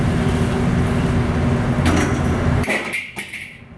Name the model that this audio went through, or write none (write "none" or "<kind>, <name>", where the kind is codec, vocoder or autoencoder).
none